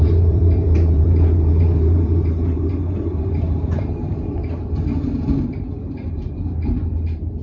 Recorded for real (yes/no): no